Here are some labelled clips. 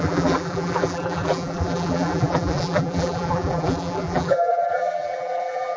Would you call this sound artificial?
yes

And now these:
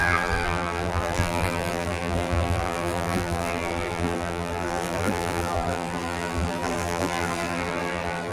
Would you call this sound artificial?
yes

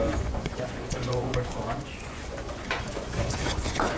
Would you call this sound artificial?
yes